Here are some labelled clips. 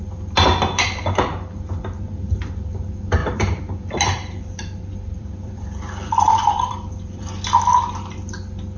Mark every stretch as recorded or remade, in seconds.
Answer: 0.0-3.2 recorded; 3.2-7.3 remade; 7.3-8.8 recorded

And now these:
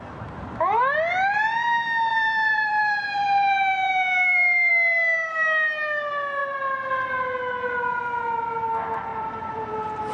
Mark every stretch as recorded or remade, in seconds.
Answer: 0.0-2.1 recorded; 2.1-4.7 remade; 4.7-9.1 recorded; 9.1-9.7 remade; 9.7-10.1 recorded

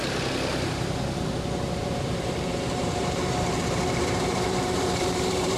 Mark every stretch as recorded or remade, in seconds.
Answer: 0.0-1.8 recorded; 1.8-5.6 remade

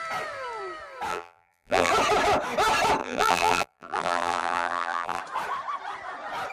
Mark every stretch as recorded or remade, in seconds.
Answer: 0.0-1.1 recorded; 1.1-1.9 remade; 1.9-3.0 recorded; 3.0-5.2 remade; 5.2-6.5 recorded

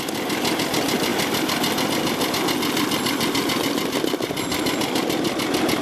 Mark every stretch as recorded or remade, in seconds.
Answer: 0.0-5.8 recorded

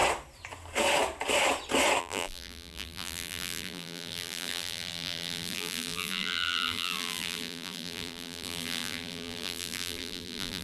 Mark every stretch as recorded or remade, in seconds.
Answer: 0.0-2.0 recorded; 2.0-10.6 remade

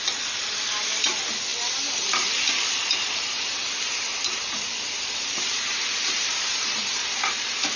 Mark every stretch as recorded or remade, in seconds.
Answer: 0.0-4.1 recorded; 4.1-7.8 remade

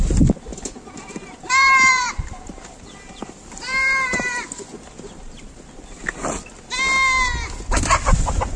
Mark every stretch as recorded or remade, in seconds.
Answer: 0.0-0.5 recorded; 0.5-5.5 remade; 5.5-8.6 recorded